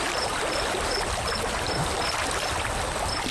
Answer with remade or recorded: recorded